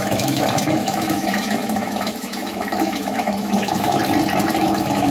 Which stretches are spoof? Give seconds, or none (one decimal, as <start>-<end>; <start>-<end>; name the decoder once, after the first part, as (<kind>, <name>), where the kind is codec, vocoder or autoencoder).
0.0-4.0 (autoencoder, DAC-VAE); 4.6-5.1